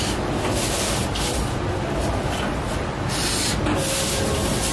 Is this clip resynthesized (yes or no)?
no